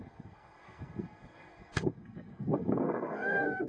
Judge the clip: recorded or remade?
remade